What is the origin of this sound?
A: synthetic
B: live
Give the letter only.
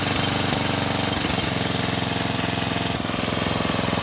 B